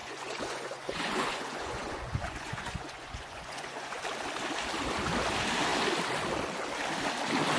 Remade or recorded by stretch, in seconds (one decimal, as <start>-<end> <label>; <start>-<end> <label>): 0.0-4.0 remade; 4.0-7.6 recorded